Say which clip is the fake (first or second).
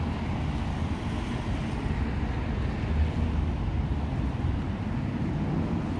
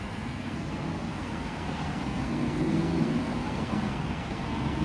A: second